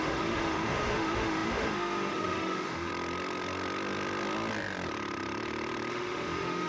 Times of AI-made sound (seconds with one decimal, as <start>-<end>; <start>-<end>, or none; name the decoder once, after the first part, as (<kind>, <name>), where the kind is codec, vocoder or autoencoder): 0.0-2.9 (autoencoder, DAC-VAE); 5.9-6.7